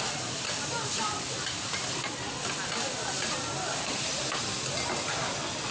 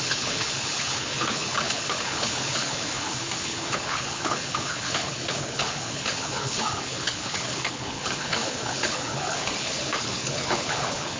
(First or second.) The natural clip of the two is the first